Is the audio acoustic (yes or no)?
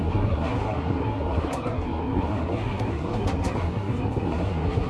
no